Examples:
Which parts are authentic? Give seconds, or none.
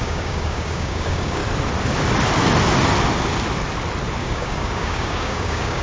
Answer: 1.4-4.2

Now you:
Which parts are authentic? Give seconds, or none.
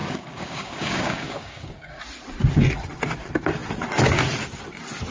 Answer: 2.0-5.1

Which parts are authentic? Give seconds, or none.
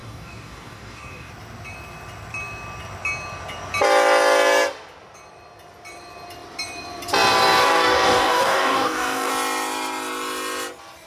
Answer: 1.3-7.6; 9.3-11.1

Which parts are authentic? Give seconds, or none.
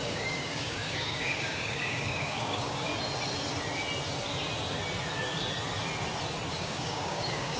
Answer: 2.9-6.5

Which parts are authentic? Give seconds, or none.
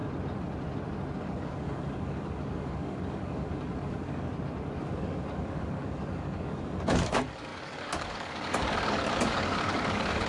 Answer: 0.0-1.2; 4.3-4.8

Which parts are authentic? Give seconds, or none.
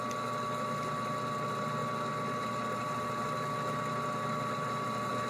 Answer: 0.0-5.3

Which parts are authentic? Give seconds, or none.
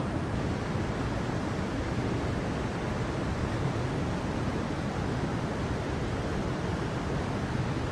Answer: 0.0-3.5; 4.0-7.9